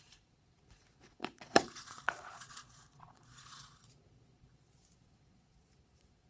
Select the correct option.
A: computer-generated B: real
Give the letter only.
A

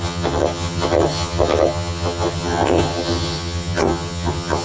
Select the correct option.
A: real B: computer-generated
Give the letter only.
B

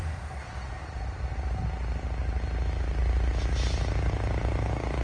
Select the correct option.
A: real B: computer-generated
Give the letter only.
A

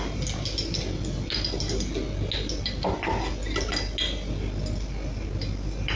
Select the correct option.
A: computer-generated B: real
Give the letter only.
B